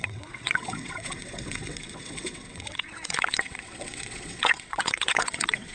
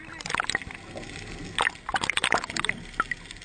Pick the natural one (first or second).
second